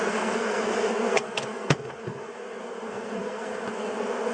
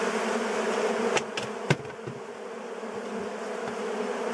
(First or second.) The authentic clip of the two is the second